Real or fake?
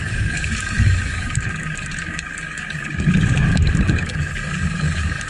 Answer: fake